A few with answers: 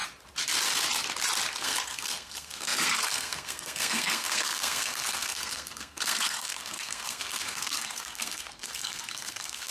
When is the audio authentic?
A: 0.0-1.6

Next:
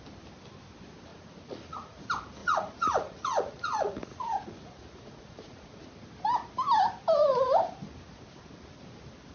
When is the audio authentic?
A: 0.0-1.1; 2.0-2.4; 5.9-9.3